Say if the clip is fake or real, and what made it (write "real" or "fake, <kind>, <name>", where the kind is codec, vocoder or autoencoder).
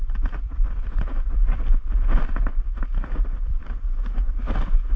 fake, vocoder, BigVGAN v2